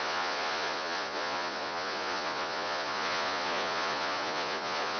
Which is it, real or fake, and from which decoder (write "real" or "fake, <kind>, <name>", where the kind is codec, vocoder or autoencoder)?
fake, vocoder, Vocos